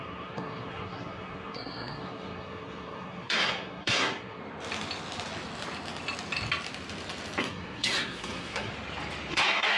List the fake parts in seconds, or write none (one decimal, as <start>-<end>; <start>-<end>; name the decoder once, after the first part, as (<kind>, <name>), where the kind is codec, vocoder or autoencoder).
0.0-4.4 (codec, SNAC); 7.4-8.7; 9.3-9.8